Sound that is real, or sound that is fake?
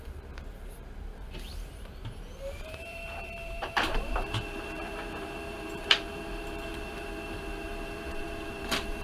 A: fake